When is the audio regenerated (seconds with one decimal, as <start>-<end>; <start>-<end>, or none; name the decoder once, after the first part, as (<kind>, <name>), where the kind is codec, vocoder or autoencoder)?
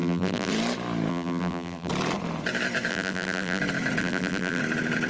0.0-0.5 (vocoder, BigVGAN v2); 1.1-1.9; 2.9-3.6; 4.0-4.6